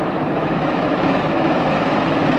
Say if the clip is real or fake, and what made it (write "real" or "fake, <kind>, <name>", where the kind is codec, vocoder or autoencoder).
fake, autoencoder, DAC-VAE